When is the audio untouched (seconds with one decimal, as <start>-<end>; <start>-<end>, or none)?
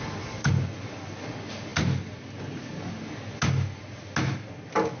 0.0-5.0